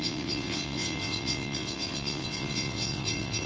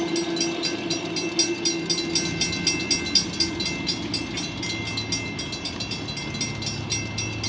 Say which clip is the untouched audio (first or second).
second